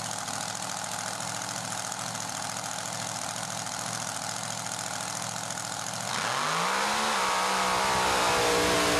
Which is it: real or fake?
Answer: real